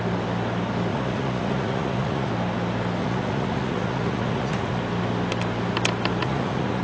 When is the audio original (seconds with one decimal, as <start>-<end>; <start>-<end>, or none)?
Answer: 0.0-0.9; 2.3-3.0; 4.8-6.2